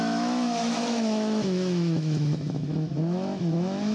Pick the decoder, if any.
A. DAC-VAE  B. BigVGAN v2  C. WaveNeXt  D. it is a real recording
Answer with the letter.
A